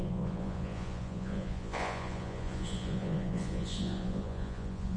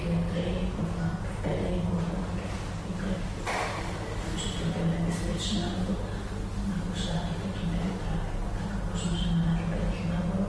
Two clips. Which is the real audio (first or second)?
second